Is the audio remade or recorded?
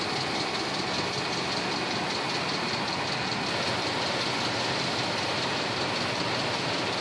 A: recorded